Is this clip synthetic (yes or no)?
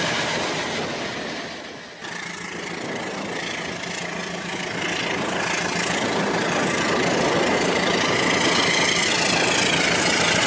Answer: no